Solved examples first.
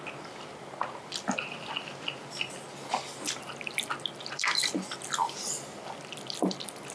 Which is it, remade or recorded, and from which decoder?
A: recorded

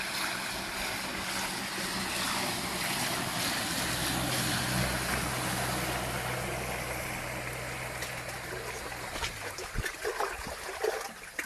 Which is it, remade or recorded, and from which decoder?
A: recorded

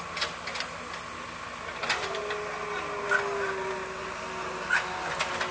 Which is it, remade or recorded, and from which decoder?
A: recorded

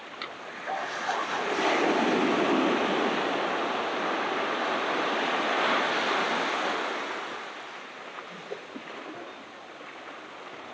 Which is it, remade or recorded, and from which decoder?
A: recorded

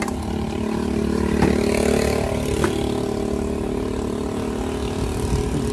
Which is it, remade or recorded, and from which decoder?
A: recorded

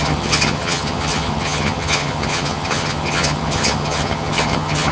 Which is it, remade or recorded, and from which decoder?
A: remade, vocoder, HiFi-GAN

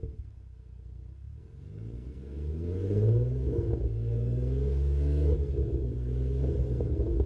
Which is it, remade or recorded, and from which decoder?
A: remade, codec, SNAC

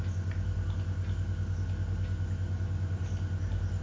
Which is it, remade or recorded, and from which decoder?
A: recorded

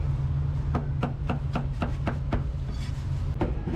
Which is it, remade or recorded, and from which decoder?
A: recorded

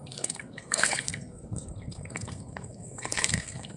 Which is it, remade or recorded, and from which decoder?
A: remade, codec, SNAC